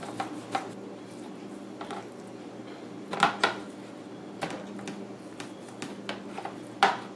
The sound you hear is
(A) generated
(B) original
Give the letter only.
B